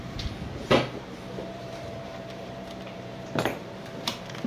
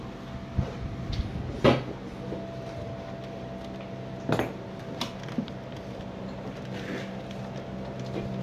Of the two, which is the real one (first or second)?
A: second